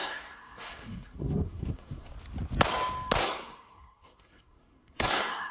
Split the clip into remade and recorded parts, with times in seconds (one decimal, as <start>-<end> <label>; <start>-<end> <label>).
0.0-2.1 remade; 2.1-3.2 recorded; 3.2-5.5 remade